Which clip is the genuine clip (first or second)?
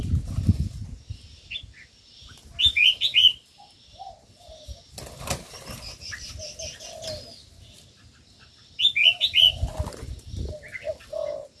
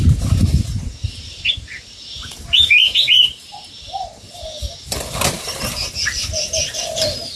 first